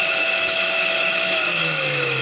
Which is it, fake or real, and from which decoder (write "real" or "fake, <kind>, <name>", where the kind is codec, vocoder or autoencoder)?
fake, autoencoder, DAC-VAE